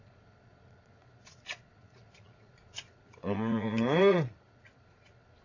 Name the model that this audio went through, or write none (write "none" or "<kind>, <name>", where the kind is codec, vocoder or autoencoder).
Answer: vocoder, Vocos